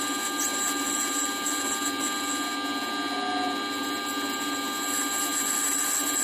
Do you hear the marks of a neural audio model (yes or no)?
no